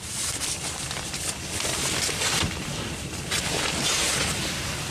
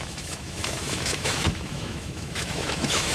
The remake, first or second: second